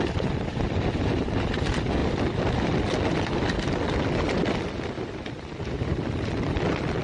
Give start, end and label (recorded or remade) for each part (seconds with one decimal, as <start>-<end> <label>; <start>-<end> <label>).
0.0-7.0 recorded